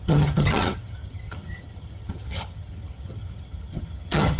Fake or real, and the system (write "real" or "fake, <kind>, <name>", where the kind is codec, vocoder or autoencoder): fake, vocoder, HiFi-GAN